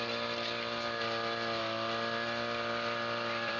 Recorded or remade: remade